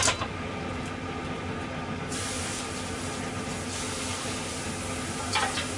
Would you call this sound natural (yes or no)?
yes